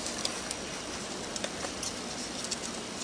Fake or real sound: real